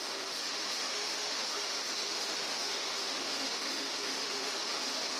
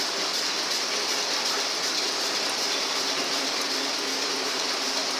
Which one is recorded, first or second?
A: second